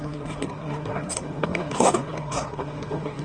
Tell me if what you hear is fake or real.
fake